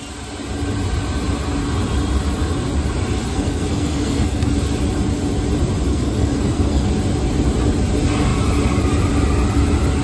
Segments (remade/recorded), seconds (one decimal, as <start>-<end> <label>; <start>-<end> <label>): 0.0-3.3 recorded; 3.3-4.5 remade; 4.5-5.9 recorded; 5.9-6.9 remade; 6.9-10.0 recorded